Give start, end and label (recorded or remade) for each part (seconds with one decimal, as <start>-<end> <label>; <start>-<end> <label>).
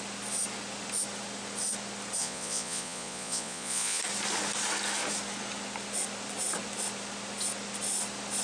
0.0-2.2 recorded; 2.2-4.0 remade; 4.0-8.4 recorded